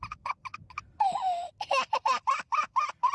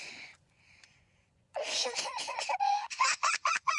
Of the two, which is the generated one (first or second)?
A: second